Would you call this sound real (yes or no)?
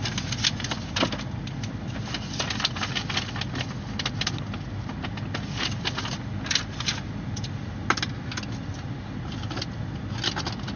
yes